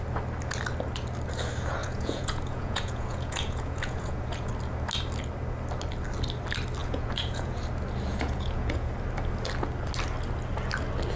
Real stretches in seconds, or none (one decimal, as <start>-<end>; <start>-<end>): 0.0-1.8; 4.5-6.8; 7.6-8.1; 8.9-11.2